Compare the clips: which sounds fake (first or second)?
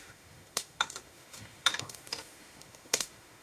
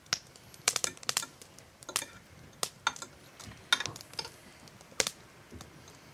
first